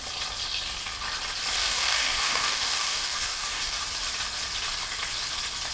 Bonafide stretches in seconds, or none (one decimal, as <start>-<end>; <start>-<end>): 0.0-1.6; 3.8-5.7